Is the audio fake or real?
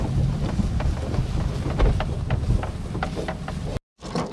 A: real